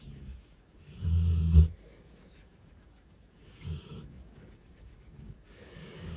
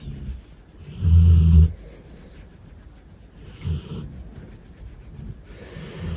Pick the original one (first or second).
second